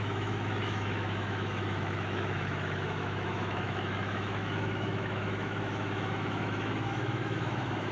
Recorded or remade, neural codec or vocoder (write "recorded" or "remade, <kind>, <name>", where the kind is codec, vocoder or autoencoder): remade, autoencoder, DAC-VAE